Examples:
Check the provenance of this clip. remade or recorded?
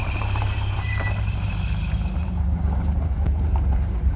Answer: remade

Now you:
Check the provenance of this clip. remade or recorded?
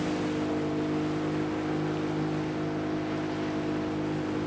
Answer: recorded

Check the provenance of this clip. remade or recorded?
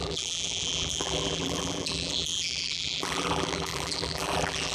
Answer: remade